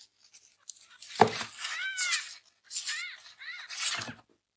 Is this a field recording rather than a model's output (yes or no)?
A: yes